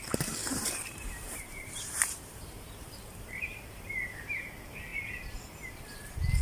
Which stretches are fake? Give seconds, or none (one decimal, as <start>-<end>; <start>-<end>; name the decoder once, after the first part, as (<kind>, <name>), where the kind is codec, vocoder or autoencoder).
0.4-4.2 (vocoder, BigVGAN v2)